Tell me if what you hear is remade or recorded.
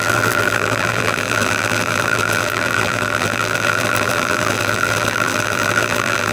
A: remade